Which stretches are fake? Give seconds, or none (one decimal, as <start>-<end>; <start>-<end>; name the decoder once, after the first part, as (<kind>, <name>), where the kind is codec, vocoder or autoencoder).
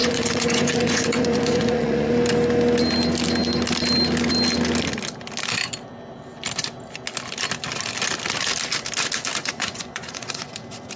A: 0.0-2.1 (vocoder, Vocos); 9.4-10.5